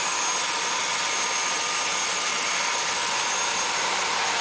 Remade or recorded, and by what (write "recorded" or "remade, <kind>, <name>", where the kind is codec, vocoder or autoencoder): recorded